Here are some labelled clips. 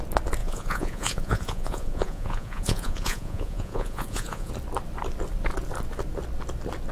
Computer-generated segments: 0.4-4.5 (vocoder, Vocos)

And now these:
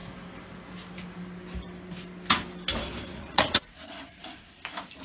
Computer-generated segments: 3.1-4.2 (vocoder, Vocos)

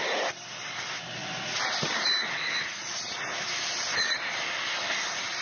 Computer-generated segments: none

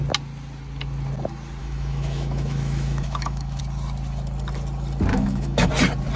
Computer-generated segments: 1.6-3.6 (autoencoder, DAC-VAE); 5.1-5.7

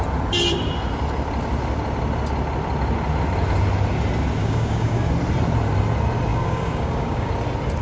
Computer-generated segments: 4.4-5.1 (codec, DAC); 6.3-7.3

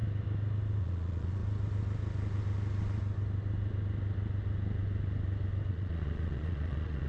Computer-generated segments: 0.8-1.4 (vocoder, Vocos); 5.7-7.1

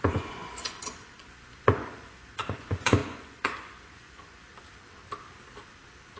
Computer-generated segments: 0.0-4.5 (vocoder, Vocos)